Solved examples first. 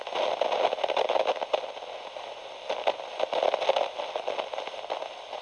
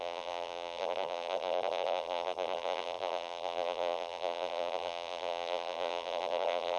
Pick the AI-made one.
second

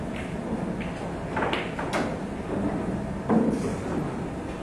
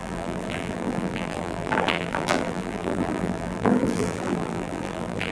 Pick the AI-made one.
second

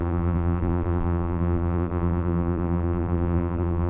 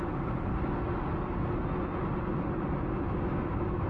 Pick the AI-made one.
first